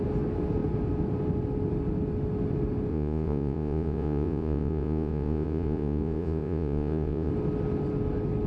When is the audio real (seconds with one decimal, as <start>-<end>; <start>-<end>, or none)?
0.0-2.9; 7.3-8.5